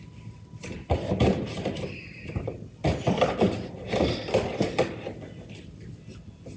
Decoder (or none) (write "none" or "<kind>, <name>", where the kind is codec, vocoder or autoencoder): none